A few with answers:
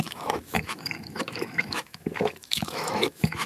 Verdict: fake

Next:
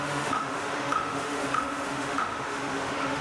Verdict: fake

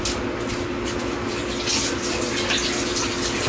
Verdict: real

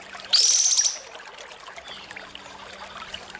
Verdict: real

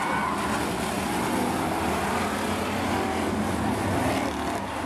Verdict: real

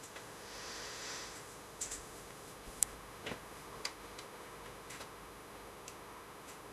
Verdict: fake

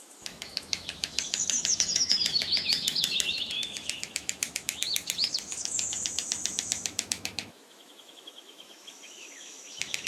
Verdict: fake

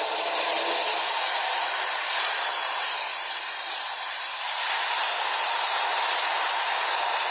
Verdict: real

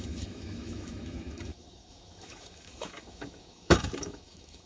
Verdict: fake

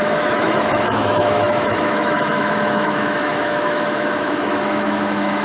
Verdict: fake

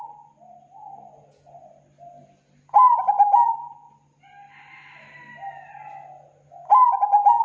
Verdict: real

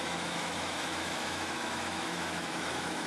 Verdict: fake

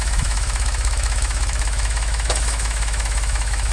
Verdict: fake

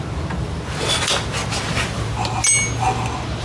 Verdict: real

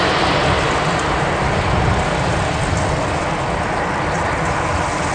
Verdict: real